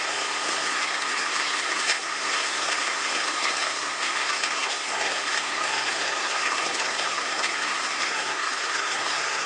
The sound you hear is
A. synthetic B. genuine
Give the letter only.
A